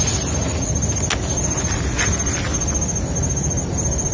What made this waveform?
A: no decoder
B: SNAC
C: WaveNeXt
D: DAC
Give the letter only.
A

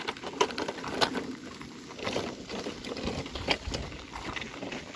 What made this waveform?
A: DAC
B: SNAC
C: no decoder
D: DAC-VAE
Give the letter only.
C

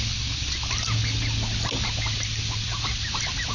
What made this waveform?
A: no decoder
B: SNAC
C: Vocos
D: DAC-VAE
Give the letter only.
A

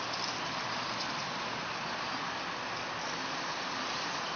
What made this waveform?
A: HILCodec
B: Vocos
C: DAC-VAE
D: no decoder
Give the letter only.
D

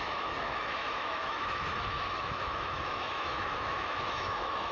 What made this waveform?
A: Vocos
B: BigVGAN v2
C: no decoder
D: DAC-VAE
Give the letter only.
D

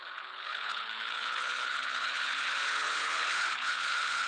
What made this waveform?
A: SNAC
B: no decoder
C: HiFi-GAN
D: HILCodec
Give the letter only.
D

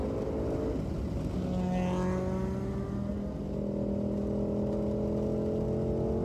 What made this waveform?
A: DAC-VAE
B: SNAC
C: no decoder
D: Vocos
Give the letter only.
C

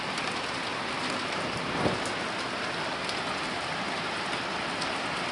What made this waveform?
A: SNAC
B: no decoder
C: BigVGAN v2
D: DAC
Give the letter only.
B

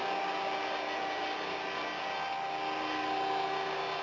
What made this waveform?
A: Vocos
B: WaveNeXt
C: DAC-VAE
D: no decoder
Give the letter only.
D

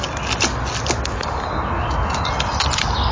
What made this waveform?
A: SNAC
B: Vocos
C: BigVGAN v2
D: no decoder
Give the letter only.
D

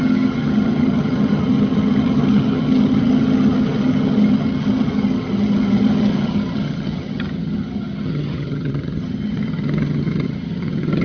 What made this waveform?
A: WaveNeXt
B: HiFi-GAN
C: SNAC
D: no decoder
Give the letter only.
B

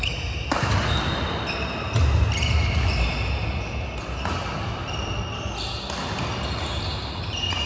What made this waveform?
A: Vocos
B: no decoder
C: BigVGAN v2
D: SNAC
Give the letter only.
B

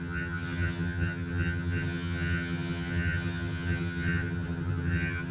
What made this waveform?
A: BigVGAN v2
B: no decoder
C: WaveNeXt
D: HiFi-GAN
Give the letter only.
D